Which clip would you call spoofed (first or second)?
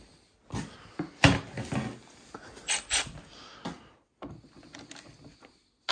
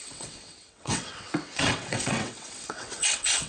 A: second